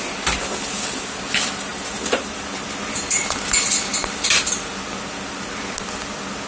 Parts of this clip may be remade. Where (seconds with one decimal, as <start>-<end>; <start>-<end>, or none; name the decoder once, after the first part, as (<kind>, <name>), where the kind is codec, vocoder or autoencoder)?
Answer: 1.7-2.4 (vocoder, BigVGAN v2)